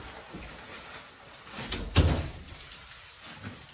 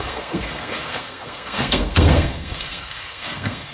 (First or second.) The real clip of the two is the first